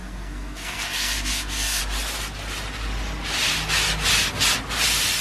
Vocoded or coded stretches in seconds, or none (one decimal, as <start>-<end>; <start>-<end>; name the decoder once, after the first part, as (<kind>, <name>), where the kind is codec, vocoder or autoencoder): 0.0-1.8 (codec, SNAC)